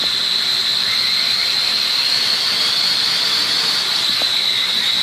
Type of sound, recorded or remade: recorded